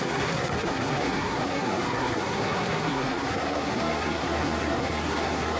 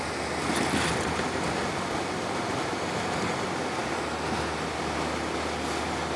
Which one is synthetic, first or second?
first